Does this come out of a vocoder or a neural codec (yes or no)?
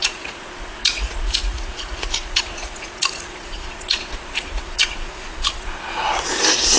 yes